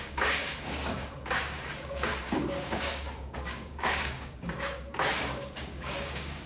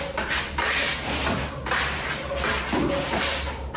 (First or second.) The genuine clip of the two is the second